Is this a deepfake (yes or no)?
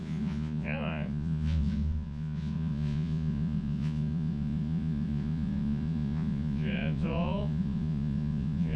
yes